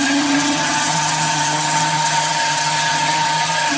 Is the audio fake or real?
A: fake